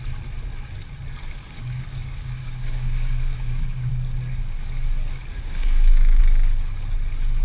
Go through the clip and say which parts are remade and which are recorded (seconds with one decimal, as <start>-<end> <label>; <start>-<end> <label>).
0.0-1.4 recorded; 1.4-3.9 remade; 3.9-5.3 recorded; 5.3-6.2 remade; 6.2-7.4 recorded